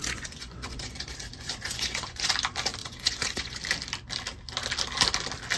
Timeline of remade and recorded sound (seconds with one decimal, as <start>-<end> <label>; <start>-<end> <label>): 0.0-2.3 remade; 2.3-2.8 recorded; 2.8-3.6 remade; 3.6-5.6 recorded